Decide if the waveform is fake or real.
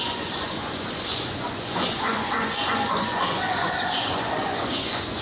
fake